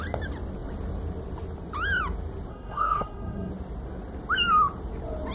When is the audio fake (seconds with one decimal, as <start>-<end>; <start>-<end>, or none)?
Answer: 2.5-3.5